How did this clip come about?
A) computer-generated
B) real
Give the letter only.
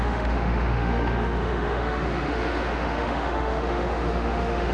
A